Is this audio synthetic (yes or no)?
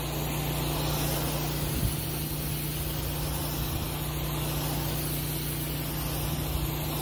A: no